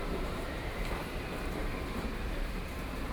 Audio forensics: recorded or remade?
remade